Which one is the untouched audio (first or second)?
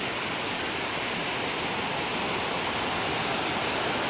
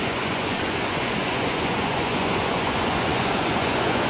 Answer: first